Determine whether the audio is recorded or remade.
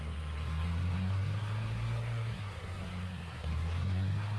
remade